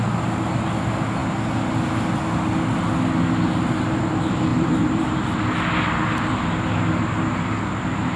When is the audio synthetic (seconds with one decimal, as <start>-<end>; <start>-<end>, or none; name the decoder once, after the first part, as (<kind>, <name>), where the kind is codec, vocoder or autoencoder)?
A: 4.5-5.2 (vocoder, BigVGAN v2)